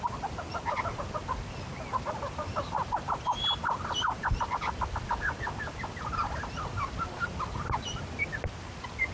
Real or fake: real